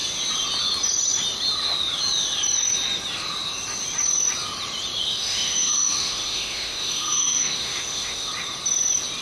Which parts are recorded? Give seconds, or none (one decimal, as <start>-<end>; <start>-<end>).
0.0-5.1; 8.3-9.2